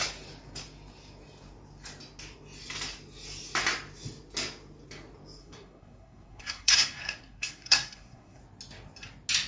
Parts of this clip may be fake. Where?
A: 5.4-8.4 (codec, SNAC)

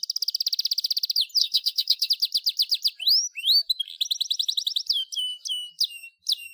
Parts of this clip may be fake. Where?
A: 1.4-2.1 (codec, SNAC)

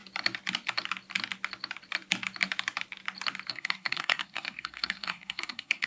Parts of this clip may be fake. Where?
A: 3.5-5.9 (codec, SNAC)

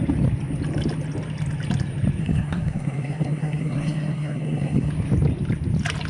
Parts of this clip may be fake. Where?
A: 2.2-4.9 (codec, SNAC)

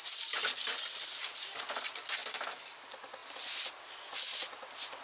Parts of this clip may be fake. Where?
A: none

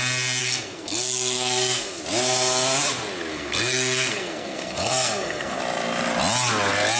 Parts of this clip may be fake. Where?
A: 0.4-2.0 (codec, SNAC); 3.3-5.6

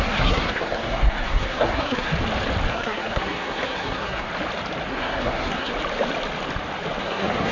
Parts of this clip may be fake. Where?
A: 0.0-2.1 (codec, SNAC); 2.7-4.3; 4.9-5.7; 7.0-7.5

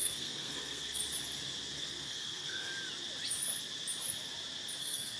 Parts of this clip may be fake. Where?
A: 0.0-1.0 (codec, SNAC); 1.8-2.7; 4.8-5.2